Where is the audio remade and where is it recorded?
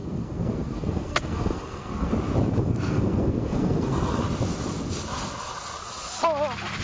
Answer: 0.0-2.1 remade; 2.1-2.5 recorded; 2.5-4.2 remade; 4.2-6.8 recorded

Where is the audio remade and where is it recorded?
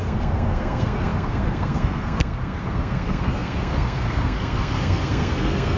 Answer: 0.0-5.8 remade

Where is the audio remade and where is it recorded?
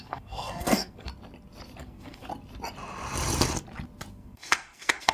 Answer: 0.0-1.1 remade; 1.1-1.8 recorded; 1.8-2.3 remade; 2.3-4.1 recorded; 4.1-5.1 remade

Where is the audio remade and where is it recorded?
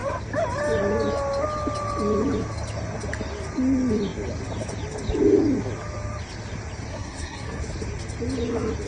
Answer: 0.0-6.9 recorded; 6.9-7.6 remade; 7.6-8.9 recorded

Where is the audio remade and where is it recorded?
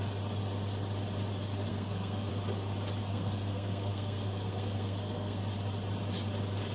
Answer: 0.0-1.7 recorded; 1.7-2.3 remade; 2.3-3.0 recorded; 3.0-5.4 remade; 5.4-6.7 recorded